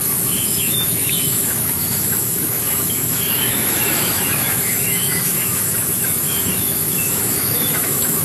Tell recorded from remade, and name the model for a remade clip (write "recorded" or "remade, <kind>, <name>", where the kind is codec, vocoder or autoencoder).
remade, autoencoder, DAC-VAE